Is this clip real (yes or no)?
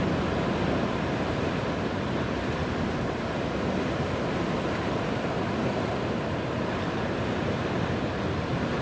no